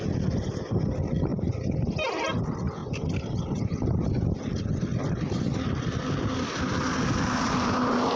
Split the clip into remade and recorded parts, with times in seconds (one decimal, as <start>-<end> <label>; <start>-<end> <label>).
0.0-8.2 recorded